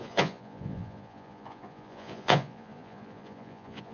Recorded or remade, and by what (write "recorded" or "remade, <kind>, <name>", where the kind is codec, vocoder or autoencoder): remade, vocoder, Vocos